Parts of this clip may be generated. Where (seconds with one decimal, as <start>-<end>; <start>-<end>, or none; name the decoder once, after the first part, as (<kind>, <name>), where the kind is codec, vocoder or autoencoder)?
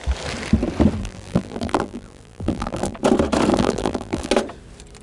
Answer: 1.0-3.0 (vocoder, BigVGAN v2); 3.5-4.3